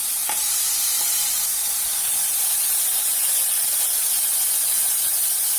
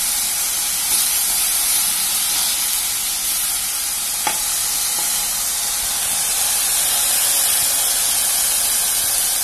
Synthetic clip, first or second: first